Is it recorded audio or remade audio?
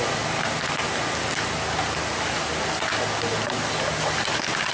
recorded